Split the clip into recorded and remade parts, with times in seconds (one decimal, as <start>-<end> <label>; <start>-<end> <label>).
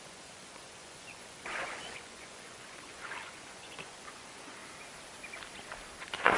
0.0-4.6 remade; 4.6-6.0 recorded; 6.0-6.4 remade